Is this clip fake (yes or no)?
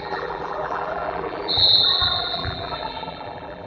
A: yes